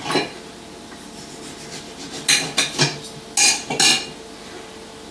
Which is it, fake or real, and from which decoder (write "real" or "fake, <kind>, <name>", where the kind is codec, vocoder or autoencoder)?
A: real